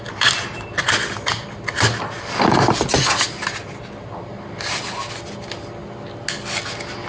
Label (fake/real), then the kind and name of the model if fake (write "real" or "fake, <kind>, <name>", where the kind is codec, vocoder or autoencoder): real